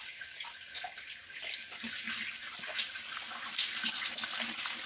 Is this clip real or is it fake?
real